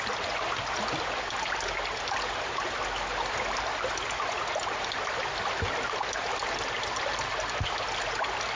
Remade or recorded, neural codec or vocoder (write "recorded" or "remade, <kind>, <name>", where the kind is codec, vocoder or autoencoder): recorded